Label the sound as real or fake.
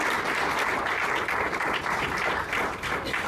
real